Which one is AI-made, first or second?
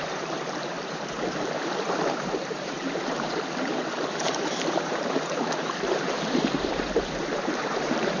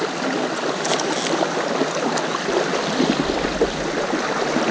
first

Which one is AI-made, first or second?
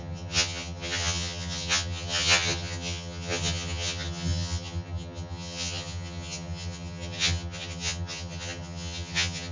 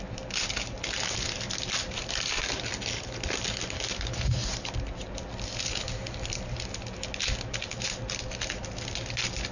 first